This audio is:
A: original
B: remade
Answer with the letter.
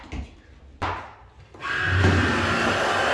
A